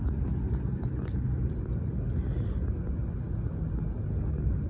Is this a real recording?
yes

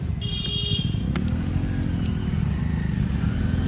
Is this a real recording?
yes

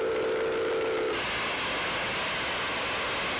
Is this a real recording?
yes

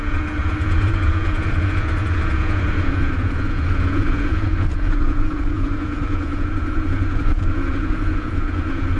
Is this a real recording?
no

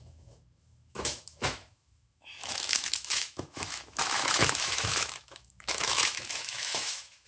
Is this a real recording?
no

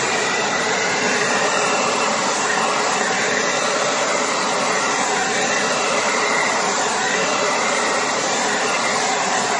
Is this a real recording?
no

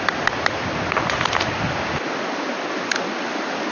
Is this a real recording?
yes